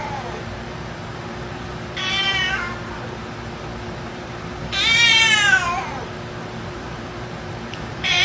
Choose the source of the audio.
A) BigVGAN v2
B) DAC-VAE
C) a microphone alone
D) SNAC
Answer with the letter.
A